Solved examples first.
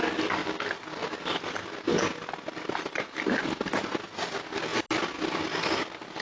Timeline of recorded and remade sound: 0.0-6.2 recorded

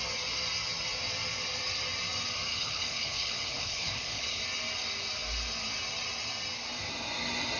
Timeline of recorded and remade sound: 0.0-2.5 recorded; 2.5-4.4 remade; 4.4-7.6 recorded

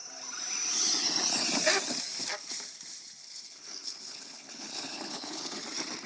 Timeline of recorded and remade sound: 0.0-3.2 recorded; 3.2-5.6 remade; 5.6-6.1 recorded

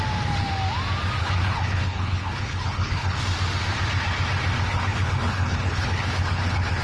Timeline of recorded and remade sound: 0.0-1.2 recorded; 1.2-3.2 remade; 3.2-4.7 recorded; 4.7-6.8 remade

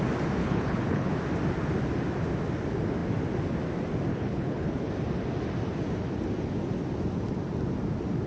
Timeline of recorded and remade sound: 0.0-0.4 recorded; 0.4-1.1 remade; 1.1-4.1 recorded; 4.1-4.9 remade; 4.9-8.3 recorded